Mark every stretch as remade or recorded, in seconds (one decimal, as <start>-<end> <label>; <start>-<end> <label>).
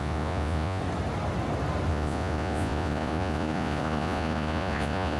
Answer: 0.0-0.8 remade; 0.8-1.9 recorded; 1.9-5.2 remade